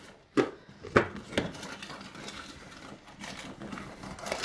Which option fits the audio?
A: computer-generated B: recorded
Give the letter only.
B